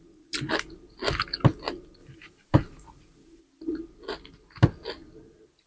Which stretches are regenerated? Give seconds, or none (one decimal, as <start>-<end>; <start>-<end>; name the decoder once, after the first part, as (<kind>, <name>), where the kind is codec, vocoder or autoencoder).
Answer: 2.0-3.4 (vocoder, BigVGAN v2)

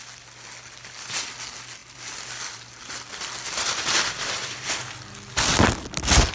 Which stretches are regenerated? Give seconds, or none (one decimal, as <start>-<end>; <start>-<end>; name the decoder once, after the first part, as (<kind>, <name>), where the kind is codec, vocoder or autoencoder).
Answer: 1.8-4.7 (vocoder, BigVGAN v2)

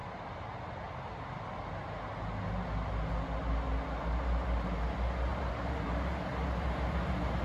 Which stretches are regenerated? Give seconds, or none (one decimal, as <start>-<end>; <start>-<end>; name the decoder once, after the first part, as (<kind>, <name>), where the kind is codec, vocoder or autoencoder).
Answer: 5.3-6.3 (vocoder, BigVGAN v2)

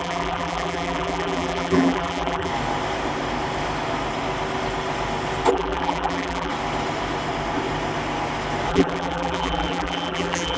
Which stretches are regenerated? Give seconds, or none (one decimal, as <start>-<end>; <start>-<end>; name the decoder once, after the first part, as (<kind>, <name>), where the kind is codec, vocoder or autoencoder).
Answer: 0.0-2.5 (vocoder, BigVGAN v2); 5.5-6.5; 8.7-10.6

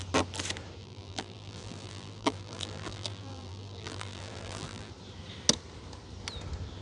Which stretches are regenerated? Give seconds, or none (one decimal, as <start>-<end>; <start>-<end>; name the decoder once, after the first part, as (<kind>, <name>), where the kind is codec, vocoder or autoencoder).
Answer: 0.8-4.9 (vocoder, BigVGAN v2)

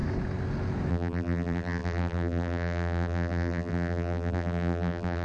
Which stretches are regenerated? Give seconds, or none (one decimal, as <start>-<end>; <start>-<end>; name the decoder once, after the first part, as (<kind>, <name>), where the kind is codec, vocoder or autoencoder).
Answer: 0.9-5.2 (vocoder, BigVGAN v2)

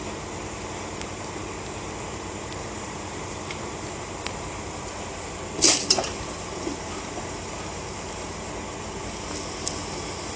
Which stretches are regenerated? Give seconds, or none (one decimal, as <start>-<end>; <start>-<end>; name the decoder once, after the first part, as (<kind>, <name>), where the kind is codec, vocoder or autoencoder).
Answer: 2.6-5.3 (vocoder, BigVGAN v2); 6.1-8.5

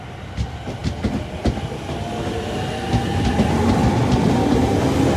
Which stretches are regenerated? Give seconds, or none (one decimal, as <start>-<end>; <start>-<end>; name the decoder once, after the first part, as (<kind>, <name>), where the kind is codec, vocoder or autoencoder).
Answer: none